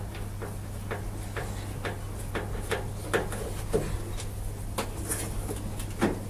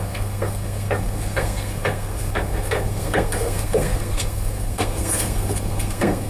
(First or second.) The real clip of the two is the first